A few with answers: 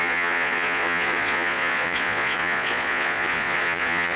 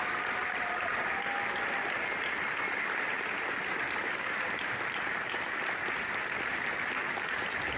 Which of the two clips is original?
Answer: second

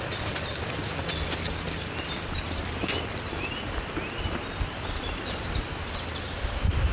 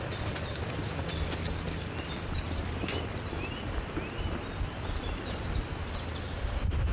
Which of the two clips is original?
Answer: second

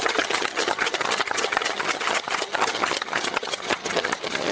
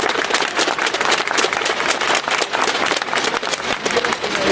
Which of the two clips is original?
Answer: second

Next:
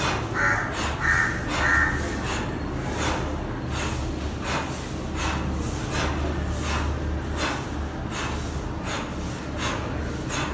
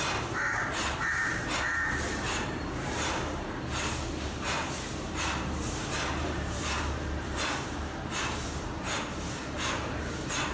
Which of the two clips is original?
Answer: first